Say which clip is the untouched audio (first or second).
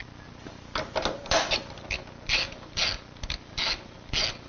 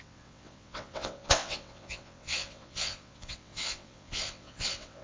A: first